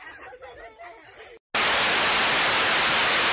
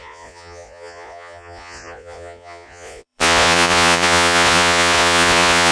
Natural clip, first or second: first